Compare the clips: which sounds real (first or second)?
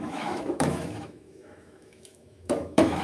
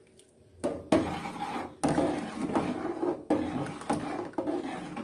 second